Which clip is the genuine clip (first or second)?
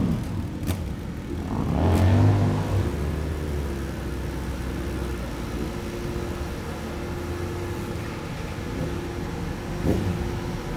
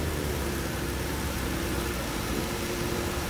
first